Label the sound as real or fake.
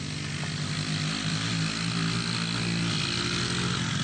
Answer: real